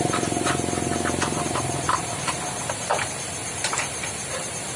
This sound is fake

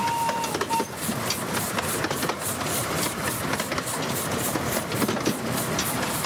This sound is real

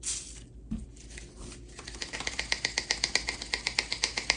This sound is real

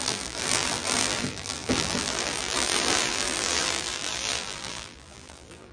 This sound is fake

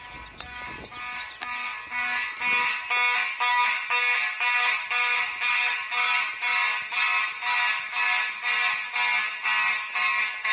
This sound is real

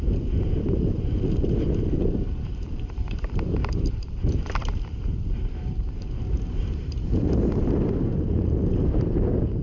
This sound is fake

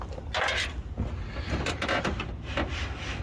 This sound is real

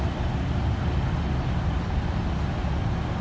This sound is real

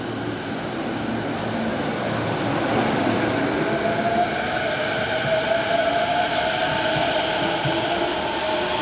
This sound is real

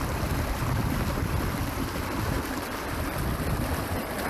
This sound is fake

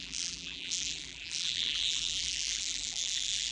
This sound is fake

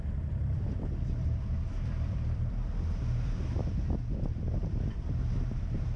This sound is fake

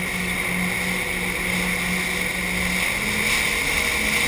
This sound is real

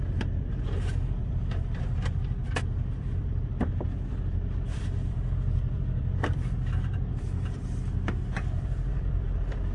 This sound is fake